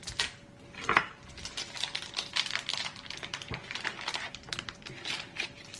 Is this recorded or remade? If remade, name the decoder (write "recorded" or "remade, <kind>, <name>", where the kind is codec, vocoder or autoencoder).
recorded